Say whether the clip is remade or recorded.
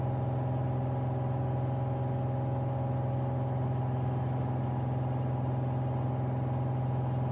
recorded